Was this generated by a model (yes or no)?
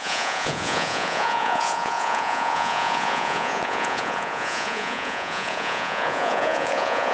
yes